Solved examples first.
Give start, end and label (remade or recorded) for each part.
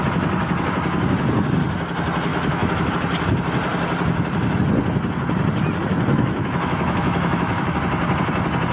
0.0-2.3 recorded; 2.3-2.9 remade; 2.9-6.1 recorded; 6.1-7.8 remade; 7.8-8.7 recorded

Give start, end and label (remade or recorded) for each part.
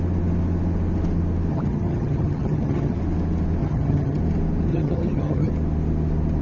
0.0-1.5 recorded; 1.5-3.0 remade; 3.0-3.6 recorded; 3.6-4.2 remade; 4.2-4.7 recorded; 4.7-5.5 remade; 5.5-6.4 recorded